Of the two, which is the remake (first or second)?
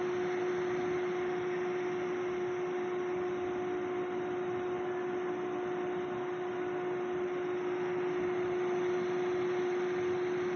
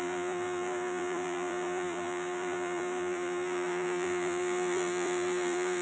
second